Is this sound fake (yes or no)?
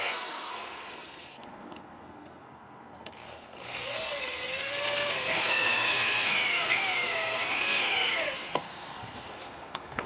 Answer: yes